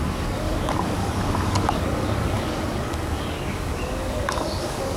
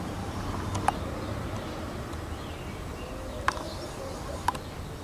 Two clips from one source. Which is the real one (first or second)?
second